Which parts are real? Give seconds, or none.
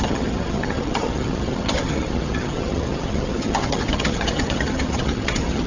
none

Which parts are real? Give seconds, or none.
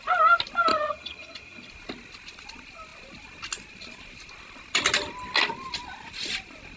0.0-0.7; 1.7-6.8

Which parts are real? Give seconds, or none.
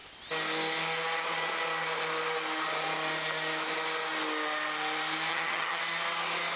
0.0-5.3; 5.8-6.6